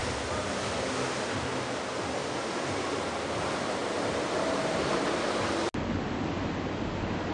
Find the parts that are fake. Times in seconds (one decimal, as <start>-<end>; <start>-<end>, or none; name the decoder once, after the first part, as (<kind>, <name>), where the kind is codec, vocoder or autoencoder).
none